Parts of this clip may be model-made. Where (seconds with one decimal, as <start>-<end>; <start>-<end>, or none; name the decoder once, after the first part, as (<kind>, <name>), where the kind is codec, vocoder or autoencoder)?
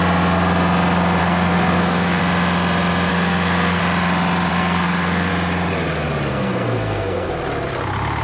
1.2-2.2 (codec, SNAC); 3.1-3.8; 4.5-5.3; 6.3-7.3